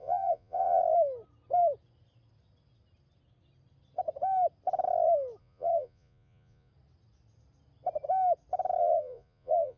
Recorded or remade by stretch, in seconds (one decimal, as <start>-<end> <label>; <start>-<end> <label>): 0.0-0.8 remade; 0.8-5.4 recorded; 5.4-6.7 remade; 6.7-8.8 recorded; 8.8-9.8 remade